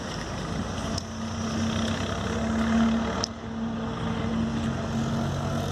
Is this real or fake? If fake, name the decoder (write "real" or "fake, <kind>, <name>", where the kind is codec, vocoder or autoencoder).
real